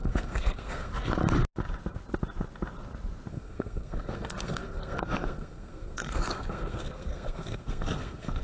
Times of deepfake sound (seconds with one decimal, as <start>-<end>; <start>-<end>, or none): 0.0-0.9; 3.3-8.4